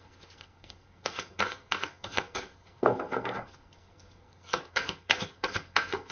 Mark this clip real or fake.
fake